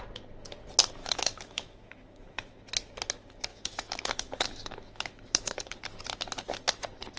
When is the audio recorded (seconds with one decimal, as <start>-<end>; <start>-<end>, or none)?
0.0-1.0; 2.6-3.5; 5.8-7.2